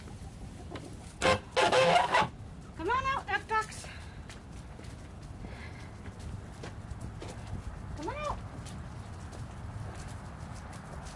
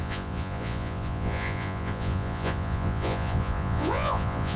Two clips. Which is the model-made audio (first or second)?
second